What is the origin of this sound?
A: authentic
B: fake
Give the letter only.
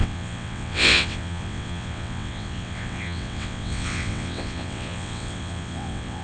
B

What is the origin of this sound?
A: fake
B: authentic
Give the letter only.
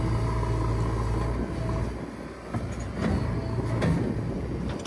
B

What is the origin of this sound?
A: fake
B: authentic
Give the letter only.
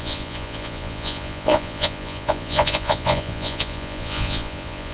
A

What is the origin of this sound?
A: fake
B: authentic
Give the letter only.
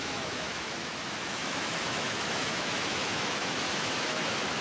A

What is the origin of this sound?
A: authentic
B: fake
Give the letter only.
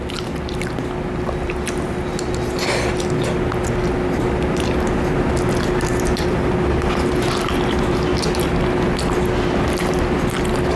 A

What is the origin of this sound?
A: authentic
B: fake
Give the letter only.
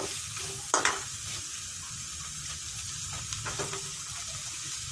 A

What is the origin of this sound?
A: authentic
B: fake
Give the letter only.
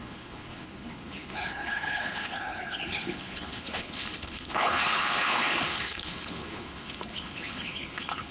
B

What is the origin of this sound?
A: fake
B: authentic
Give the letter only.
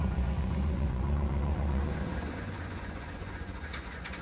A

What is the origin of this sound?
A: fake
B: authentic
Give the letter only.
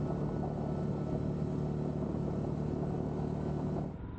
B